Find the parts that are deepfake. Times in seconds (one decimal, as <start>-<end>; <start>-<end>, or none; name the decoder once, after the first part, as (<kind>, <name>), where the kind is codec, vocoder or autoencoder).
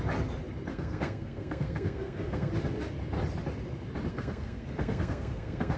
0.7-2.5 (codec, SNAC); 4.1-5.8